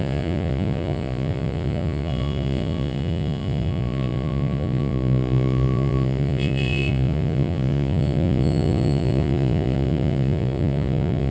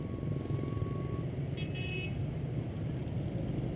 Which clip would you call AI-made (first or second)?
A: first